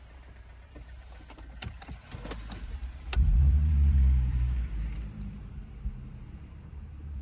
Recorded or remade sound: remade